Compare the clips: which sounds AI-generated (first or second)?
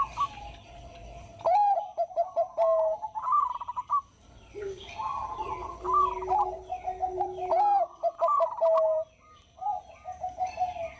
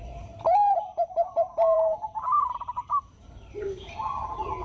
second